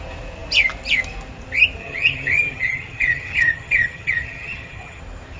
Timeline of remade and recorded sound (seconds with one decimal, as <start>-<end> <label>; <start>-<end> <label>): 0.0-1.8 recorded; 1.8-5.0 remade; 5.0-5.4 recorded